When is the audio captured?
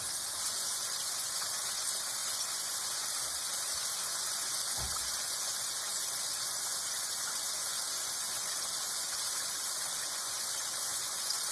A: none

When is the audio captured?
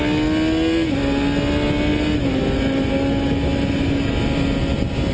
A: 0.0-5.1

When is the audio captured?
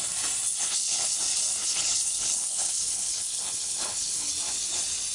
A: 0.0-0.5; 1.2-1.6; 4.3-5.1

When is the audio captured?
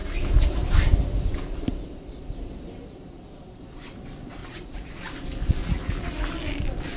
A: 0.0-4.4; 5.0-5.6; 6.3-7.0